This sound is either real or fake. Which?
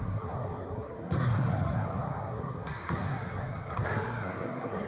fake